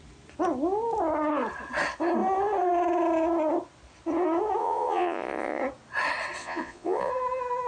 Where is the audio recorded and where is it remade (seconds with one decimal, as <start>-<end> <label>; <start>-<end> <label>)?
0.0-4.6 recorded; 4.6-5.6 remade; 5.6-6.4 recorded; 6.4-7.1 remade; 7.1-7.7 recorded